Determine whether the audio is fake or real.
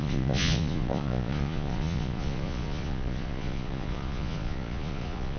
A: fake